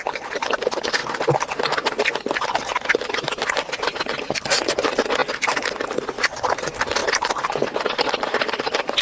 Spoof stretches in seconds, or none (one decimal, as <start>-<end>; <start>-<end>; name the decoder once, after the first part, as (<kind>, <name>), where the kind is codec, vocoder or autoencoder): none